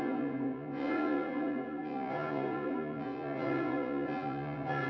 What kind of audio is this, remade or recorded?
remade